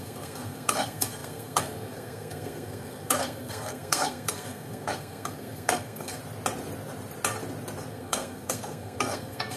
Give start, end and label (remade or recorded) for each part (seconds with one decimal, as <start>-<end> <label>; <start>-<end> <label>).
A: 0.0-6.2 remade; 6.2-7.9 recorded; 7.9-9.6 remade